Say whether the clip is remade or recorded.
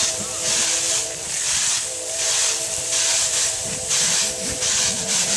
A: recorded